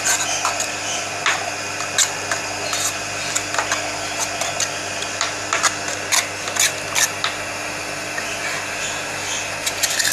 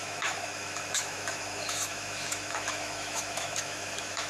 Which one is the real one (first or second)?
first